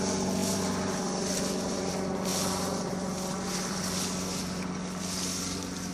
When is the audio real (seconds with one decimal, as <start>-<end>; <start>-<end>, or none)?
0.0-0.4; 1.9-2.3; 4.7-5.9